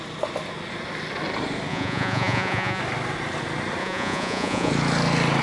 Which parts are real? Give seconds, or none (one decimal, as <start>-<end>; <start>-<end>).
0.0-1.7; 2.8-3.8; 4.7-5.4

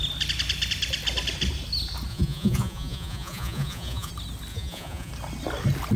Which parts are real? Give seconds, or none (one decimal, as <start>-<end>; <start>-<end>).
0.0-2.1; 4.1-4.5; 5.1-6.0

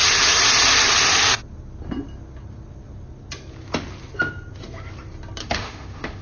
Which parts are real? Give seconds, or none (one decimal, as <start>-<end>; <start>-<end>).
0.0-5.4

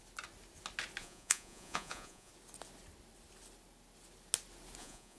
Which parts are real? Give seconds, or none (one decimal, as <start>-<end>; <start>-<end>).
0.0-1.0; 2.3-4.8

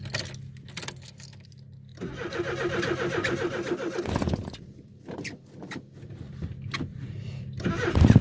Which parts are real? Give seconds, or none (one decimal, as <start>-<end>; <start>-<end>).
0.0-1.9; 6.3-6.9

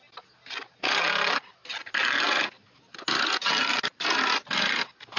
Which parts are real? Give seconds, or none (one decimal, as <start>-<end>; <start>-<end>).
0.0-5.2

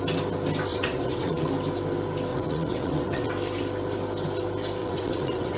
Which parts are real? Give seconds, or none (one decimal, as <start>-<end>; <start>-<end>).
0.0-0.7; 1.5-2.3; 3.3-4.8